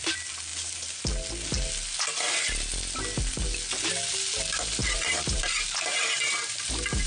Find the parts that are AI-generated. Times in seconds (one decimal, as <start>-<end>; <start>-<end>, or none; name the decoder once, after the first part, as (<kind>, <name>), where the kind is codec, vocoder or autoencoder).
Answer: 4.8-7.1 (vocoder, BigVGAN v2)